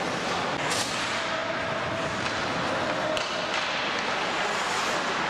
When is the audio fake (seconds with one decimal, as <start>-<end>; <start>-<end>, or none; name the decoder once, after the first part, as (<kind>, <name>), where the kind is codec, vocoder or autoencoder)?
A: none